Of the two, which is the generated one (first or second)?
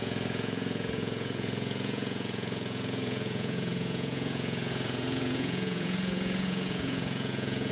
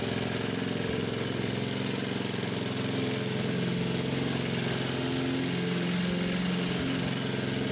first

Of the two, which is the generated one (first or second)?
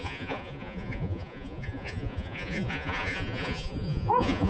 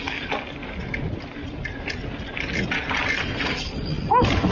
first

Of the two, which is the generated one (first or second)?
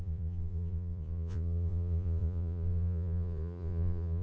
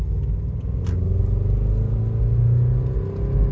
first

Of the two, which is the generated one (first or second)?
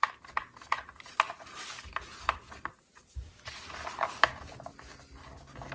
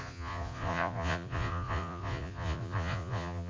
second